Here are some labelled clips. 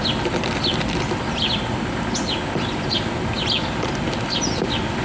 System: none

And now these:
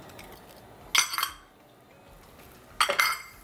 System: none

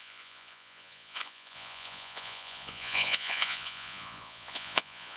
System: vocoder, Vocos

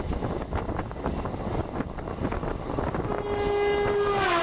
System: none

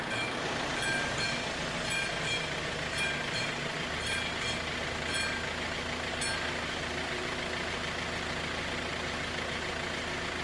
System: none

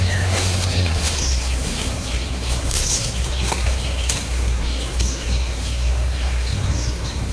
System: codec, SNAC